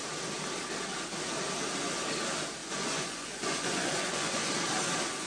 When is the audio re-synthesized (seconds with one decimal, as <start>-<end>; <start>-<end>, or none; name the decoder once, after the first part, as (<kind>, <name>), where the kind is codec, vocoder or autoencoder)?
2.6-4.5 (vocoder, Vocos)